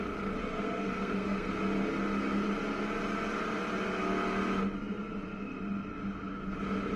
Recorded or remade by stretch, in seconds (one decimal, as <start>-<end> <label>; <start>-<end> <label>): 0.0-0.4 recorded; 0.4-1.5 remade; 1.5-7.0 recorded